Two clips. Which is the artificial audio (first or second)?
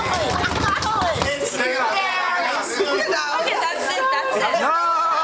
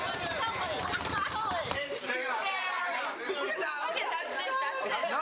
second